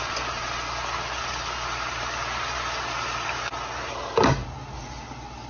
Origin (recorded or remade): recorded